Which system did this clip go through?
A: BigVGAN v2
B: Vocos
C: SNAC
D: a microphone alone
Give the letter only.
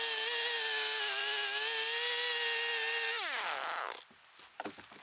D